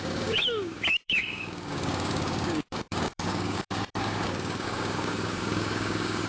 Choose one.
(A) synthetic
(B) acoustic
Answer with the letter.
A